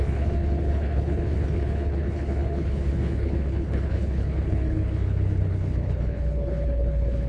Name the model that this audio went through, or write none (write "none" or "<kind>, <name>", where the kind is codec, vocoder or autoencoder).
codec, HILCodec